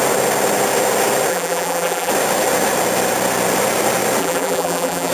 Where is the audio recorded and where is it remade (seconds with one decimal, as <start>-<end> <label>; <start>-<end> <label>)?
0.0-1.3 recorded; 1.3-2.1 remade; 2.1-4.2 recorded; 4.2-5.1 remade